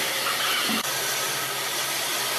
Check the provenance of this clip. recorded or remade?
remade